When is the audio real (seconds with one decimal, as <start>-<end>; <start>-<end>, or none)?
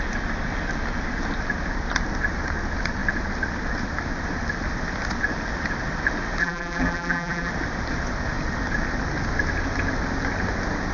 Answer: 0.0-6.4; 7.5-10.9